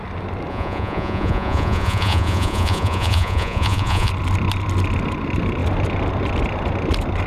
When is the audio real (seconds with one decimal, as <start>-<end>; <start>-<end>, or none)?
0.0-0.5; 4.1-7.3